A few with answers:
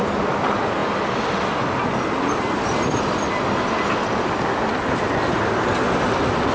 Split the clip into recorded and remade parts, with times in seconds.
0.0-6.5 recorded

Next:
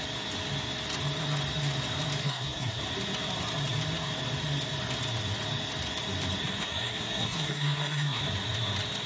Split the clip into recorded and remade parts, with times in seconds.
0.0-2.2 recorded; 2.2-2.8 remade; 2.8-6.6 recorded; 6.6-8.2 remade; 8.2-9.1 recorded

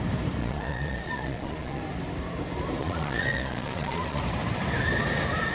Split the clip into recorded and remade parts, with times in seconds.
0.0-0.4 recorded; 0.4-1.8 remade; 1.8-2.8 recorded; 2.8-4.2 remade; 4.2-5.5 recorded

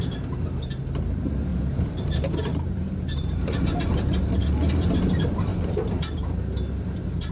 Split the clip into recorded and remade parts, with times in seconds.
0.0-1.5 recorded; 1.5-3.6 remade; 3.6-5.5 recorded; 5.5-7.3 remade

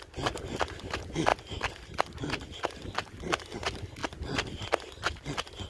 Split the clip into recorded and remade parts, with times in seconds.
0.0-5.7 recorded